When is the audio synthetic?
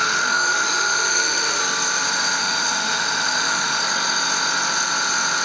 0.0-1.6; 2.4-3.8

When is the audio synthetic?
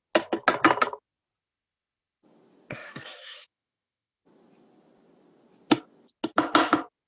2.8-4.2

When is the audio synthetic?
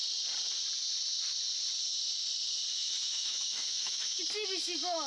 2.7-4.2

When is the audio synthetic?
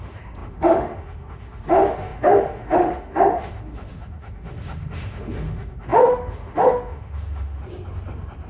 0.0-7.6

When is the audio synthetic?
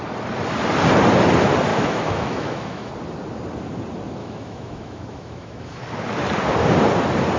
1.7-2.9; 4.2-5.8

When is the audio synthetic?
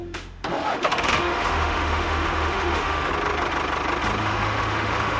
0.0-3.1; 4.2-5.2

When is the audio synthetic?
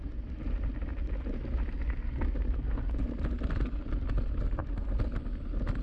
none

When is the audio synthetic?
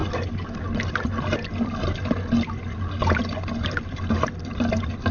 none